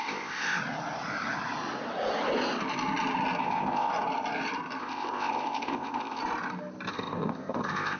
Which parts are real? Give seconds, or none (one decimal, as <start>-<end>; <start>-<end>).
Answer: 0.6-3.4; 3.9-4.8; 6.2-6.9